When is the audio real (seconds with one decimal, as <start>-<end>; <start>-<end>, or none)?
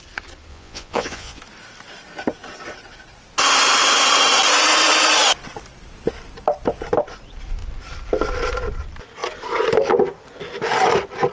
0.0-0.5; 1.4-11.3